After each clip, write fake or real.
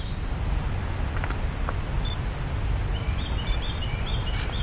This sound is real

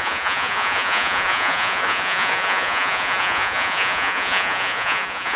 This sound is fake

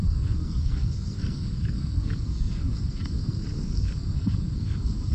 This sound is fake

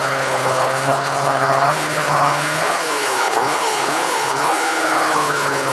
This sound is fake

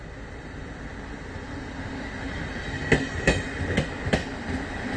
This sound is real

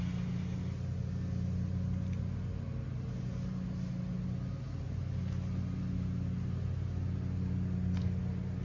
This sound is real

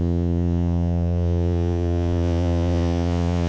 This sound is fake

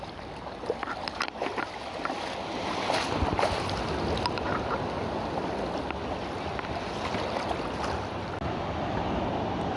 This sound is real